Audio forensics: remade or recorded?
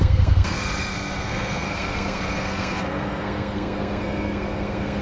remade